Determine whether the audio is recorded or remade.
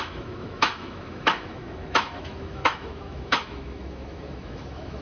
remade